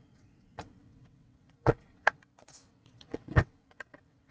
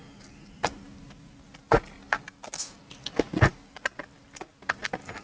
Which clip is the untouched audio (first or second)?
second